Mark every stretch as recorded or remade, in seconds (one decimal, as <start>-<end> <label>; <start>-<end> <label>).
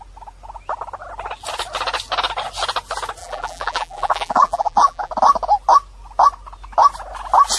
0.0-3.2 recorded; 3.2-5.1 remade; 5.1-7.6 recorded